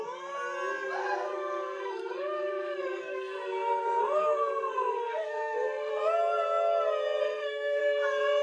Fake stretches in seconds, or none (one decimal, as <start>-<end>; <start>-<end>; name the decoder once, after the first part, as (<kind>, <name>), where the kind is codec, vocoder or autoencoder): 1.0-5.9 (codec, SNAC); 7.2-7.8